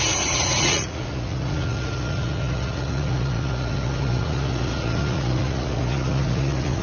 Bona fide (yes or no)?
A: no